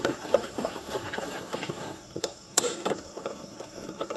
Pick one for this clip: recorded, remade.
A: remade